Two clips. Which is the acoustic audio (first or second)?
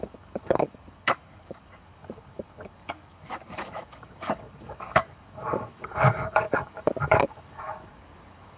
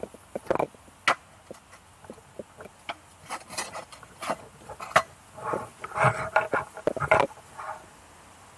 second